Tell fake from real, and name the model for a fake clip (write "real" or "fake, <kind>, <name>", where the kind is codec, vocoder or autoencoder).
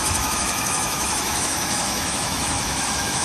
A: fake, autoencoder, DAC-VAE